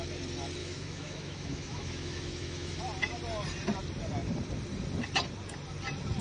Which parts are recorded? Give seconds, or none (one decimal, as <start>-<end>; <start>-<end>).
0.0-0.6; 2.8-6.2